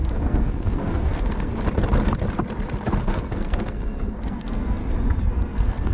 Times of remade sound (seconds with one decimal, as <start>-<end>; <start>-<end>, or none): 0.0-1.5; 3.0-4.8; 5.3-5.9